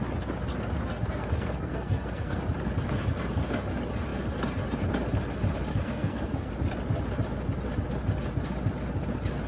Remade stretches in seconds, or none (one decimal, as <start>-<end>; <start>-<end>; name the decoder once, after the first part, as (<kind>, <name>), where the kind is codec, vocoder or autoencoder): 0.9-2.4 (codec, SNAC); 5.7-6.5